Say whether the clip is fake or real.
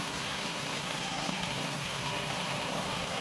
fake